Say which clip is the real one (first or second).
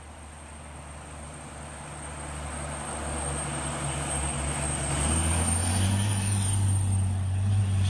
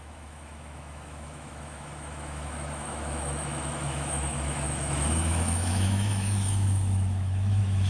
first